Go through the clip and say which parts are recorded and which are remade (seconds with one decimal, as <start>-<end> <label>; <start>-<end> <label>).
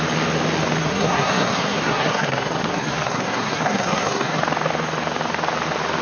0.0-0.8 recorded; 0.8-4.4 remade; 4.4-6.0 recorded